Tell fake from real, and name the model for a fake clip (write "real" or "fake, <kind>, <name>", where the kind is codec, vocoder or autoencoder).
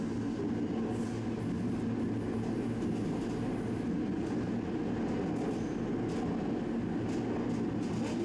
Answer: real